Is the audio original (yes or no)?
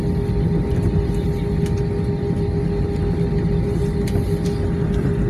yes